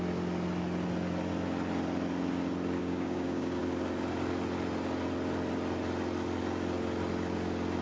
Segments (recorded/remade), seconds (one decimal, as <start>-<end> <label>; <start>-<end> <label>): 0.0-2.8 recorded; 2.8-3.6 remade; 3.6-7.8 recorded